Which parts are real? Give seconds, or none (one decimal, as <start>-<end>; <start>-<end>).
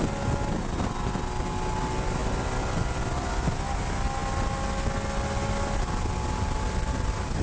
0.0-7.4